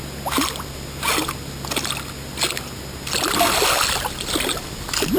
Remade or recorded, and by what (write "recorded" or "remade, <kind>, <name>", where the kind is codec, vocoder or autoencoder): recorded